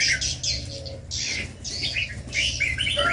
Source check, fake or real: real